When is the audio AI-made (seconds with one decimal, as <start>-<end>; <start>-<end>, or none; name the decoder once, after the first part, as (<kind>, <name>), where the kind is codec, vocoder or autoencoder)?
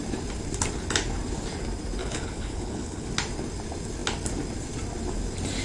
2.0-3.1 (codec, HILCodec)